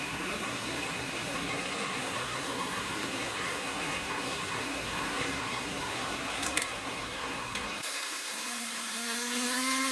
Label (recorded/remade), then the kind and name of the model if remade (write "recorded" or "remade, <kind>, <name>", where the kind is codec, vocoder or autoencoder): remade, codec, SNAC